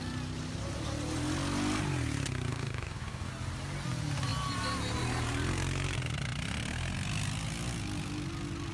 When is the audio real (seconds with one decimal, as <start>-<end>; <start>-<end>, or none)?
0.0-2.5; 3.3-8.7